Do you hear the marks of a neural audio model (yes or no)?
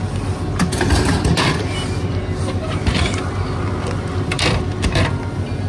no